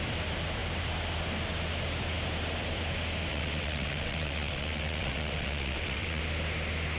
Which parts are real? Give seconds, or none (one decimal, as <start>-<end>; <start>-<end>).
0.0-3.3; 6.2-7.0